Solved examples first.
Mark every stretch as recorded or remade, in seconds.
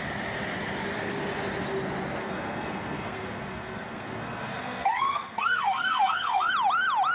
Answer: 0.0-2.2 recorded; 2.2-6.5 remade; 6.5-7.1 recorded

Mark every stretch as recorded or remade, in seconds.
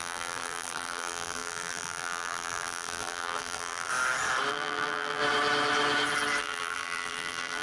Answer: 0.0-3.9 remade; 3.9-4.5 recorded; 4.5-5.2 remade; 5.2-6.4 recorded; 6.4-7.6 remade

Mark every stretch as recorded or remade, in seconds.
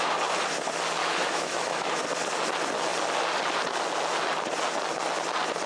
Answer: 0.0-1.0 recorded; 1.0-2.0 remade; 2.0-5.7 recorded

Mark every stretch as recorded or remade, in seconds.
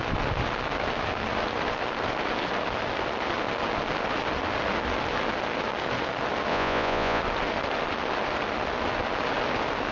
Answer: 0.0-6.5 recorded; 6.5-7.2 remade; 7.2-9.9 recorded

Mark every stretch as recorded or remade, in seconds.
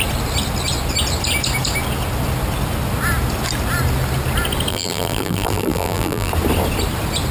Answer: 0.0-4.7 recorded; 4.7-6.3 remade; 6.3-7.3 recorded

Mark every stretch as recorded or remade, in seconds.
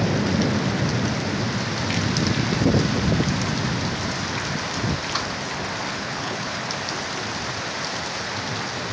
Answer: 0.0-5.9 recorded; 5.9-6.6 remade; 6.6-8.9 recorded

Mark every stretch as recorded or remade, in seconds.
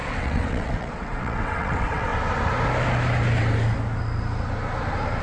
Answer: 0.0-2.1 remade; 2.1-5.2 recorded